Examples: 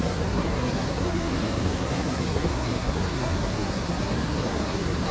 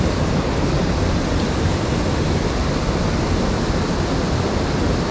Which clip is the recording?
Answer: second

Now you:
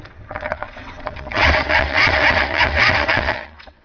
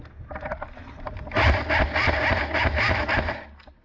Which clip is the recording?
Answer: second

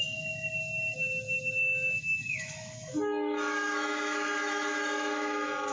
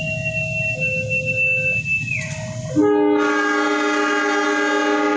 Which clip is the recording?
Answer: second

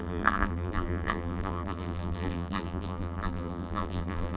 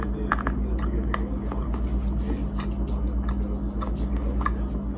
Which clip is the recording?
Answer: second